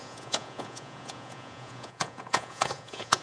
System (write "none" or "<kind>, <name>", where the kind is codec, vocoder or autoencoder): vocoder, Vocos